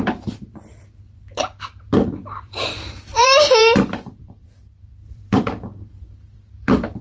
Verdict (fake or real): fake